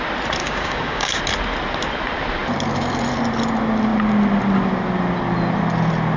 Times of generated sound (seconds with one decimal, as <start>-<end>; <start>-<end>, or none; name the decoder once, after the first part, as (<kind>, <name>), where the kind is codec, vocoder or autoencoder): 0.4-1.2 (codec, DAC)